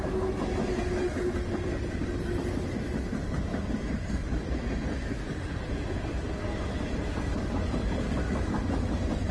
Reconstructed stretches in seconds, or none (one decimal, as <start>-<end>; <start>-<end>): none